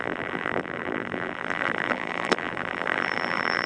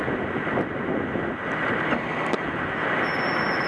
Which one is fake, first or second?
first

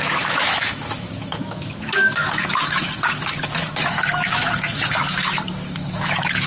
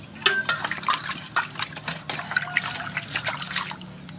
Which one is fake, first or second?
first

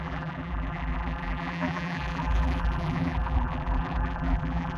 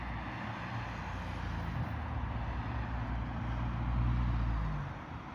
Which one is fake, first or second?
first